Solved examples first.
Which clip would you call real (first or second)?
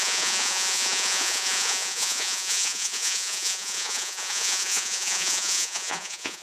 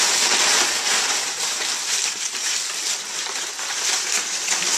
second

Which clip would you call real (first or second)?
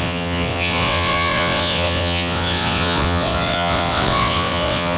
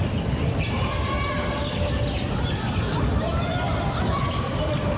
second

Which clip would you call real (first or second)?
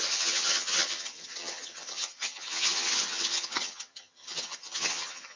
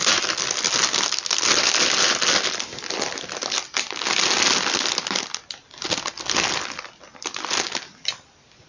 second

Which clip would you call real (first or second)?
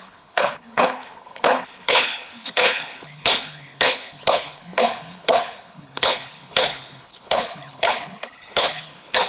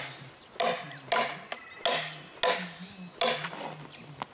second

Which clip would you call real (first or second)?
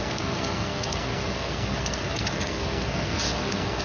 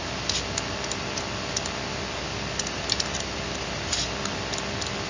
second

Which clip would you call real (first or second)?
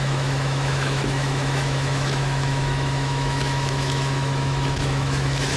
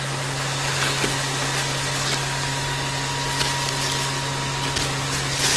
second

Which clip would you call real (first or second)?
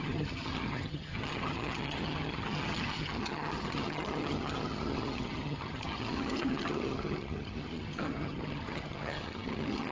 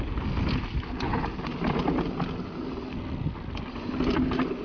second